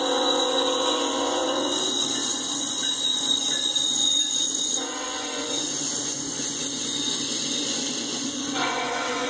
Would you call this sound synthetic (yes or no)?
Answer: yes